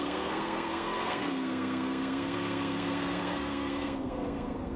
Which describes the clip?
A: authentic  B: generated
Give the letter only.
B